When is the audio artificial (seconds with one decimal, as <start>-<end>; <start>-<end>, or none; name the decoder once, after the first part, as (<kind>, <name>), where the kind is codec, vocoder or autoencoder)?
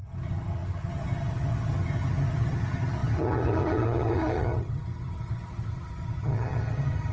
0.0-7.1 (vocoder, HiFi-GAN)